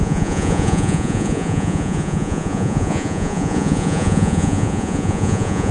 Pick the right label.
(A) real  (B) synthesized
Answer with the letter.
B